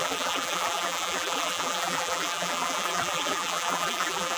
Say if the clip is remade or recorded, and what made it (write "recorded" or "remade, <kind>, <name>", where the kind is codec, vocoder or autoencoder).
remade, vocoder, BigVGAN v2